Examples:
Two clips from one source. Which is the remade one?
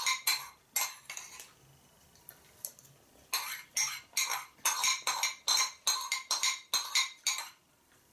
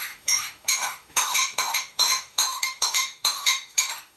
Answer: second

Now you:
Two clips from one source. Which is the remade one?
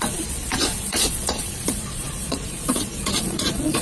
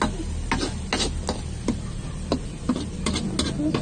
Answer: first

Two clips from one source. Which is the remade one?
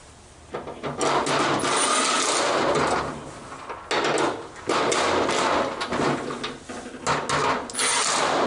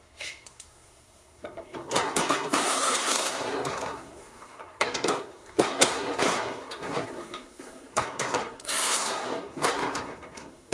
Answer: second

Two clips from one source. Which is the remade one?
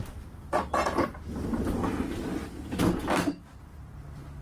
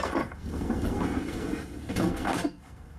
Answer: second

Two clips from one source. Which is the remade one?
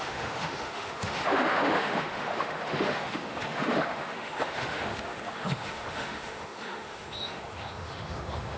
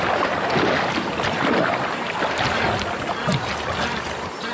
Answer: first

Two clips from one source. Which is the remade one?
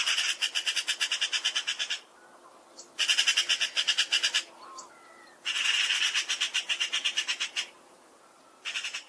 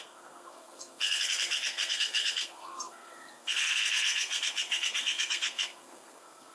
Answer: second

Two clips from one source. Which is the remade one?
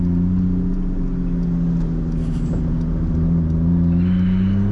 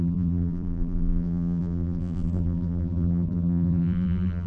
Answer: second